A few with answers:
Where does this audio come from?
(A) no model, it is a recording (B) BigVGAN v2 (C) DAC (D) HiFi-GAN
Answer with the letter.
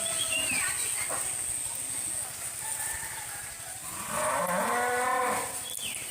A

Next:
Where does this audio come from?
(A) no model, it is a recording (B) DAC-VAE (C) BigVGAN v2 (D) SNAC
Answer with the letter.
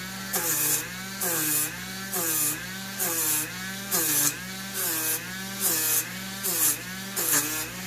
A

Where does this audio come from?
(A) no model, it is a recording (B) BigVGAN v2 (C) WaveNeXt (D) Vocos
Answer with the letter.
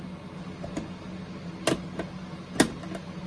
A